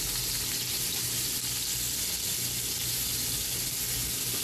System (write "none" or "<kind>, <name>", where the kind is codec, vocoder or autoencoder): none